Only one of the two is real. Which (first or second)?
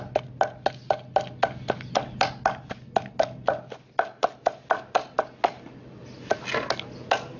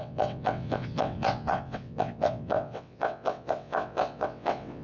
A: first